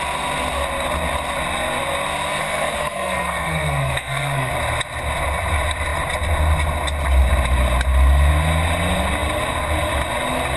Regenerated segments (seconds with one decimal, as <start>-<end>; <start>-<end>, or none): 2.4-4.5